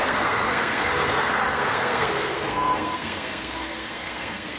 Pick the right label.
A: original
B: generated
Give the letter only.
B